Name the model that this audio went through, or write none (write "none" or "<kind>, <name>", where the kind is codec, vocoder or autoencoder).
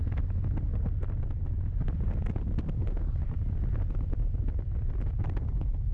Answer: none